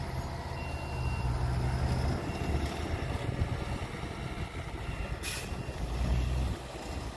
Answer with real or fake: real